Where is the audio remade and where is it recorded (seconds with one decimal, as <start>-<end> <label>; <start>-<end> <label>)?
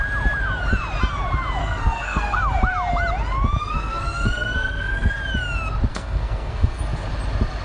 0.0-1.6 recorded; 1.6-2.4 remade; 2.4-3.6 recorded; 3.6-5.1 remade; 5.1-5.9 recorded; 5.9-6.8 remade; 6.8-7.6 recorded